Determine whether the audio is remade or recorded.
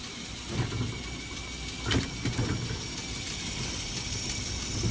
recorded